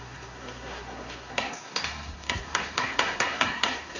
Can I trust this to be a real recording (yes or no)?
no